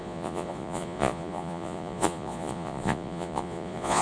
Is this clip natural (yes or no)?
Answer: no